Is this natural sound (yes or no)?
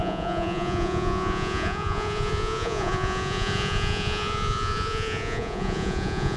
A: no